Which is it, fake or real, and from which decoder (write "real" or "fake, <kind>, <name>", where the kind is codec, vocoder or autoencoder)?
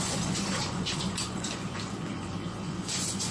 fake, vocoder, Vocos